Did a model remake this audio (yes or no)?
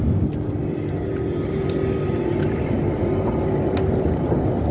no